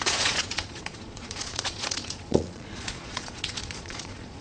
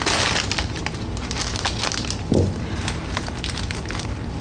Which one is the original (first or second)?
second